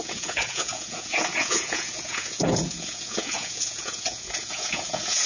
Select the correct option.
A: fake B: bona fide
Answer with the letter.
A